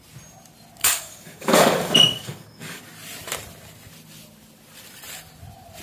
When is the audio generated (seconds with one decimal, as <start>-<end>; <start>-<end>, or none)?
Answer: 0.8-2.8